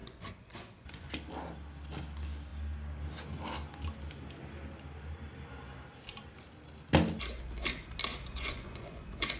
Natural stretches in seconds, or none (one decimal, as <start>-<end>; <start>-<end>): 1.1-8.1